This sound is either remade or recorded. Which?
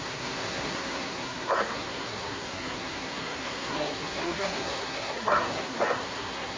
remade